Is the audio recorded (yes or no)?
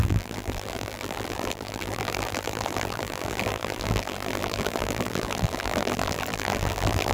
no